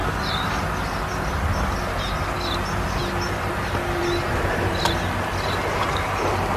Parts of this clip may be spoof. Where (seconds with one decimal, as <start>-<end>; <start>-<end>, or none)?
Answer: none